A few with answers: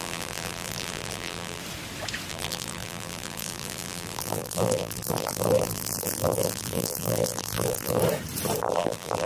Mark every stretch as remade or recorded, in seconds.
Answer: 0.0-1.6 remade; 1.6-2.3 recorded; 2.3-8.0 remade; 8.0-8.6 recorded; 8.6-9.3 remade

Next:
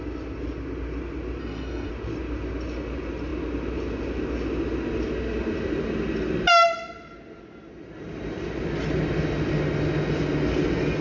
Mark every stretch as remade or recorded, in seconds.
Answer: 0.0-1.4 recorded; 1.4-1.9 remade; 1.9-11.0 recorded

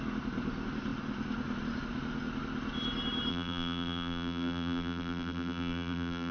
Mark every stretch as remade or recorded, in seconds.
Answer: 0.0-3.3 recorded; 3.3-6.3 remade

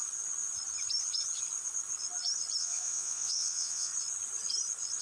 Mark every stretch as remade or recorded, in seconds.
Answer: 0.0-2.6 recorded; 2.6-3.9 remade; 3.9-5.0 recorded

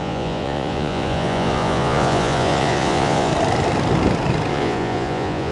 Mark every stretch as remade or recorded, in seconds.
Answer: 0.0-3.3 remade; 3.3-4.5 recorded; 4.5-5.5 remade

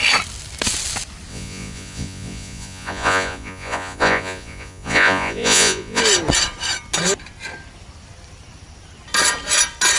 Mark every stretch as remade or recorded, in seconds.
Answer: 0.0-1.3 recorded; 1.3-6.0 remade; 6.0-10.0 recorded

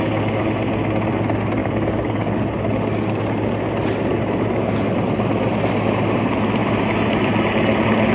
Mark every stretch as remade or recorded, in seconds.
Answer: 0.0-1.6 recorded; 1.6-2.4 remade; 2.4-8.1 recorded

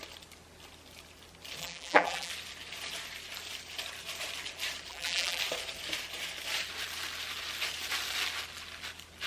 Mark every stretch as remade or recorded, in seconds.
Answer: 0.0-1.6 recorded; 1.6-2.3 remade; 2.3-4.9 recorded; 4.9-5.4 remade; 5.4-9.3 recorded